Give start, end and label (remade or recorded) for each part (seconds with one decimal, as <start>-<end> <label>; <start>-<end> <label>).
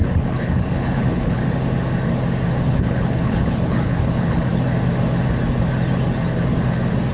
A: 0.0-1.4 remade; 1.4-2.7 recorded; 2.7-4.5 remade; 4.5-7.1 recorded